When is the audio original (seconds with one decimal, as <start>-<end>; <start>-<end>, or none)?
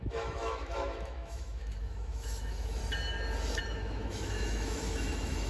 2.8-3.6